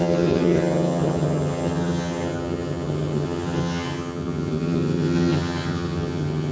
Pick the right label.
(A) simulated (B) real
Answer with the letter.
A